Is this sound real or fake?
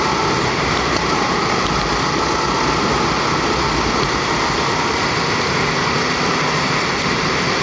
real